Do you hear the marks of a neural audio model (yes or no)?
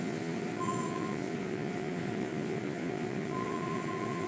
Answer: yes